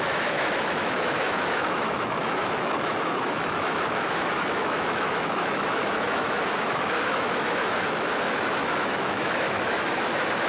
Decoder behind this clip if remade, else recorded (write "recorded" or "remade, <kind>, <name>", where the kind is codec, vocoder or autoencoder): remade, autoencoder, DAC-VAE